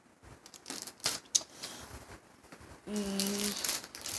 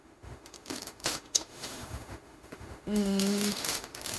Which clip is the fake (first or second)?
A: second